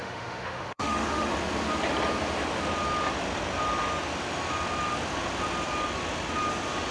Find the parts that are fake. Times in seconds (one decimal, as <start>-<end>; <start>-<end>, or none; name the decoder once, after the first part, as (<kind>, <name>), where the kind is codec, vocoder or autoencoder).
0.0-1.3 (autoencoder, DAC-VAE)